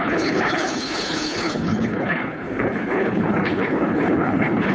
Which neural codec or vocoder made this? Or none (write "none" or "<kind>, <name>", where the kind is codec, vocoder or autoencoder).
codec, HILCodec